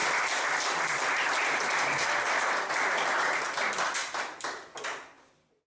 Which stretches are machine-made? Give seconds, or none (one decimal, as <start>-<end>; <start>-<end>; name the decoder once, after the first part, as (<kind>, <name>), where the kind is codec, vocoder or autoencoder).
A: none